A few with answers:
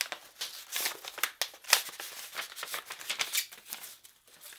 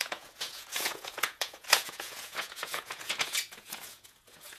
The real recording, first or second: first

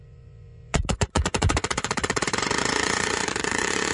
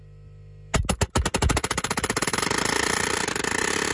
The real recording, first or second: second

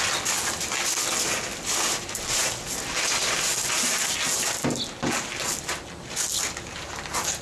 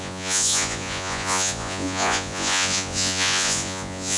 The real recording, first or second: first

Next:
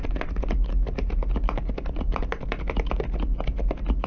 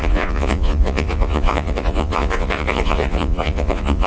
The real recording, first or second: first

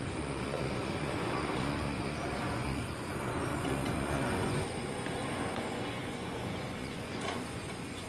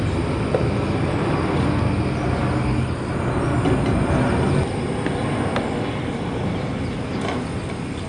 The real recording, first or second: second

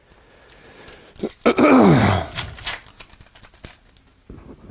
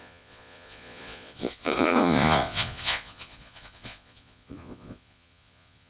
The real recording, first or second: first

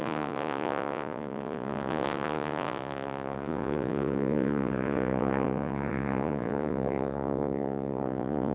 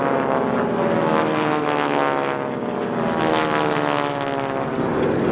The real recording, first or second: second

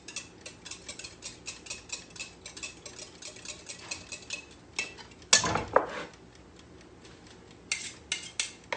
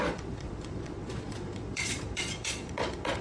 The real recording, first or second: first